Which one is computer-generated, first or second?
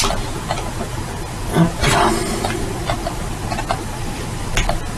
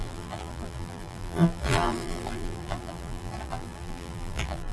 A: second